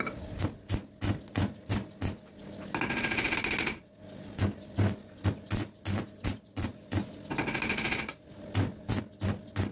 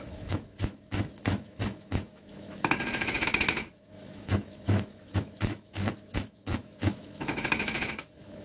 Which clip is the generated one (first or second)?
second